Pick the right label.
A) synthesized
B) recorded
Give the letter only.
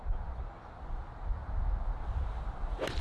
B